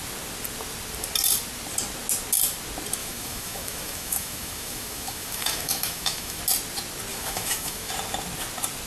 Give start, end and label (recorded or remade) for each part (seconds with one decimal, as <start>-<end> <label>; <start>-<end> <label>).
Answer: 0.0-3.0 recorded; 3.0-6.4 remade; 6.4-7.1 recorded; 7.1-7.9 remade; 7.9-8.9 recorded